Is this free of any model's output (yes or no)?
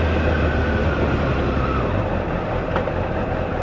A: yes